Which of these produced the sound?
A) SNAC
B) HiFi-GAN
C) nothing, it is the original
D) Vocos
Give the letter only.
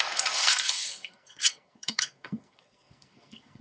A